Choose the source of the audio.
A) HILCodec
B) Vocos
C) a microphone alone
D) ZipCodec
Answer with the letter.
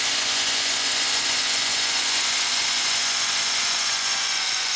B